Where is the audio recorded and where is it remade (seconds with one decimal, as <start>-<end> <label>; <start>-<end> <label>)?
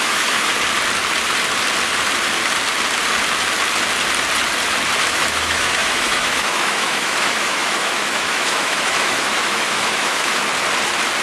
0.0-0.5 remade; 0.5-5.1 recorded; 5.1-10.4 remade; 10.4-11.2 recorded